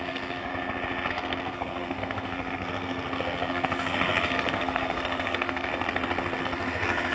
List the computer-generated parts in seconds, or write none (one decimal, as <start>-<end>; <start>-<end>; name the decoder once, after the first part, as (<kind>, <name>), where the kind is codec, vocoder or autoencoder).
0.0-0.5 (codec, SNAC); 1.1-5.7; 6.4-7.1